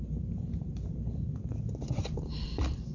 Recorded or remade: remade